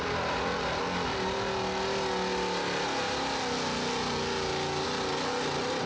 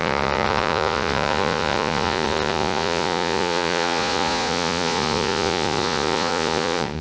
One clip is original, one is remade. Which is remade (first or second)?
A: second